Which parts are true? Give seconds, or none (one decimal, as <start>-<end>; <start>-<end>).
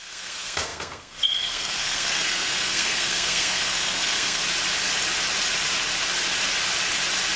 4.4-7.4